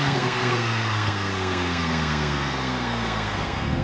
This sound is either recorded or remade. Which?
remade